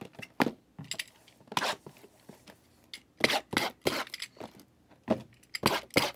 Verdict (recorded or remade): recorded